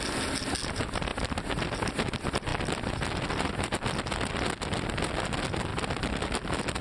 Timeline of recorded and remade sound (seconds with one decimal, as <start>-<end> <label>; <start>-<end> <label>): 0.0-6.8 recorded